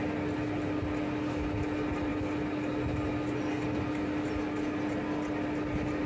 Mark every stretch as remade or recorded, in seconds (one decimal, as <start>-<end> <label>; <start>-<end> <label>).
0.0-6.1 recorded